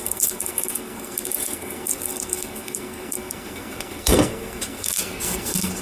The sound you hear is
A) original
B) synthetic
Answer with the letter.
B